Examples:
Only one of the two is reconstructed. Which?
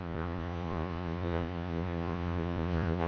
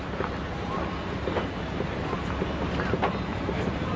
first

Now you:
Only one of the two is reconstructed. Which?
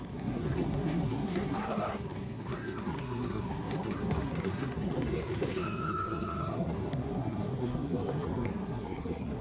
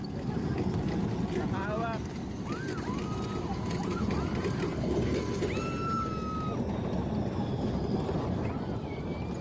first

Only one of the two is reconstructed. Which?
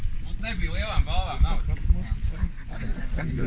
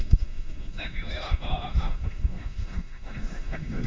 second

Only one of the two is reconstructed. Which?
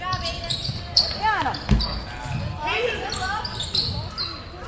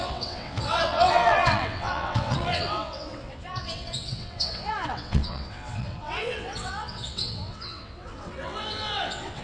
second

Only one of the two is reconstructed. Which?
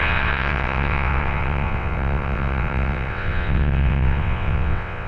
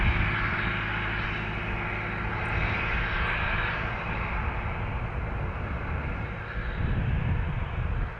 first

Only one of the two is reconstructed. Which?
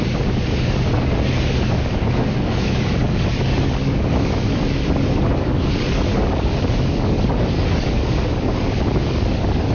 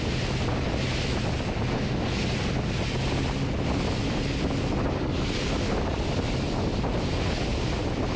first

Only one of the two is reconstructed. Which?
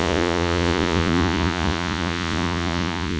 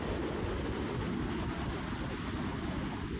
first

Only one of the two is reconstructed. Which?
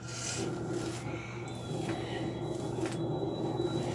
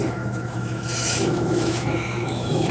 second